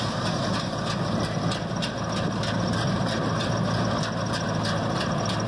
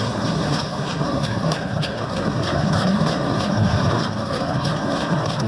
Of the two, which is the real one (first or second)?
first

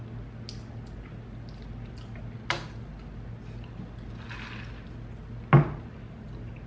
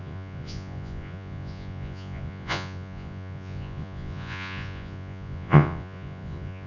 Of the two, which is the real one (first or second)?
first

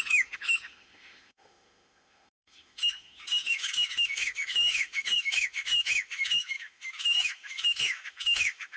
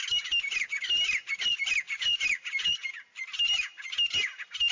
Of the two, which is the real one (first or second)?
second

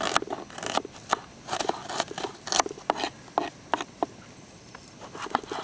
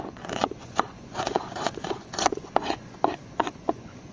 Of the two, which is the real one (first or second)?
first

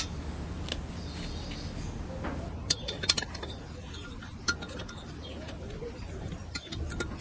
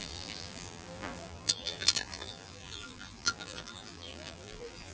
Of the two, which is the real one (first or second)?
first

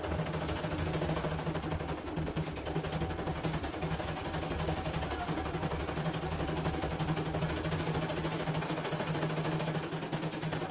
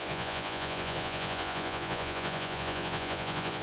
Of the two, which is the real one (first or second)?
first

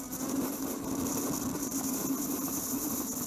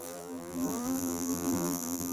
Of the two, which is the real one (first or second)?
first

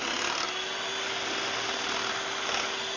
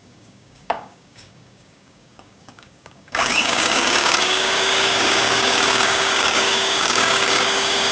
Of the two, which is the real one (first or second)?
first